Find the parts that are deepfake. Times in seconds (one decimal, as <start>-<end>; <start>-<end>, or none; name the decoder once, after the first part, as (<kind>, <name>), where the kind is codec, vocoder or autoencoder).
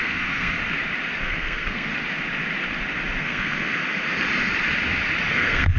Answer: 0.0-0.6 (codec, SNAC); 1.2-1.9; 3.2-3.8; 5.3-5.8